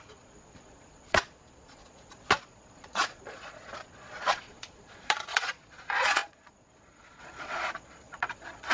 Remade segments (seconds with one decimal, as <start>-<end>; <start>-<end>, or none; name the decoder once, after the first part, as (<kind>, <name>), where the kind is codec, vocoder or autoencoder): 0.0-8.7 (vocoder, Vocos)